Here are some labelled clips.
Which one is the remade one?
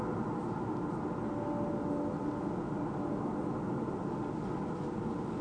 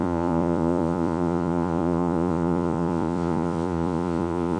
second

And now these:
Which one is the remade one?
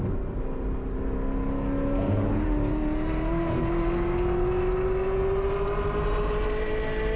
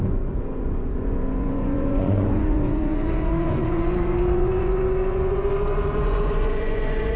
second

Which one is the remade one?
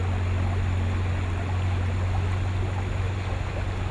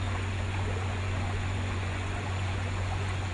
second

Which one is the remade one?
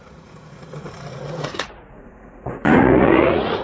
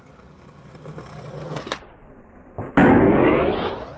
first